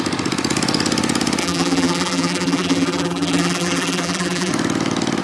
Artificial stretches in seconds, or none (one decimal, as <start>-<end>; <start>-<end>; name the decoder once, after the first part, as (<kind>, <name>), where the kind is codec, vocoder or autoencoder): 1.4-4.5 (vocoder, BigVGAN v2)